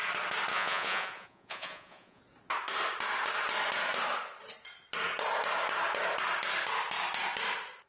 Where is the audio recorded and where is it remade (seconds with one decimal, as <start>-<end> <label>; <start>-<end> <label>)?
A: 0.0-0.5 recorded; 0.5-2.2 remade; 2.2-7.9 recorded